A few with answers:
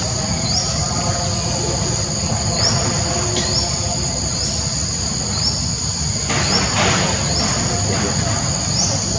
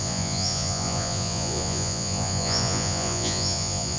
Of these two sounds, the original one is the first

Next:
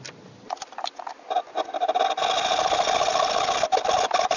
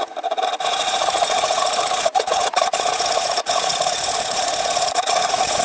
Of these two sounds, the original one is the first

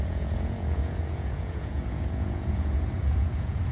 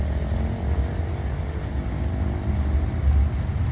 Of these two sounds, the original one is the second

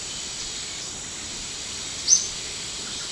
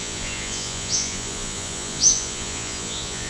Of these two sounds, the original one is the first